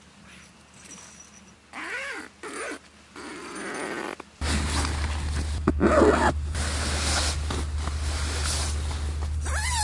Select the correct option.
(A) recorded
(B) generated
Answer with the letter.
A